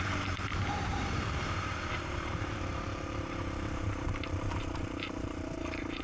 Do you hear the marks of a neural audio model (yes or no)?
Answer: yes